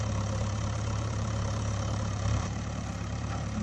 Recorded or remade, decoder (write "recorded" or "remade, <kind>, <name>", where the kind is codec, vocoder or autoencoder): remade, vocoder, BigVGAN v2